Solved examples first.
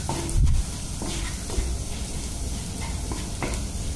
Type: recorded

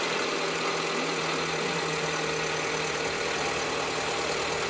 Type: recorded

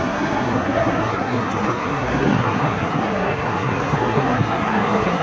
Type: remade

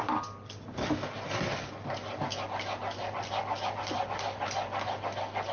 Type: recorded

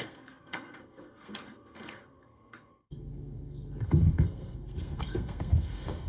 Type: remade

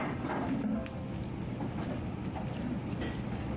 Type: recorded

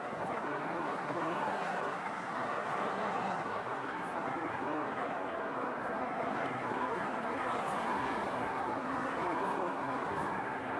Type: remade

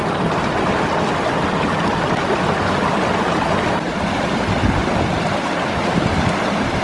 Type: recorded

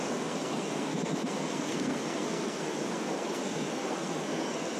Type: remade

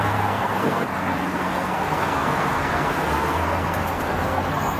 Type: remade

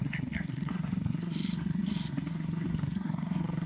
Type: remade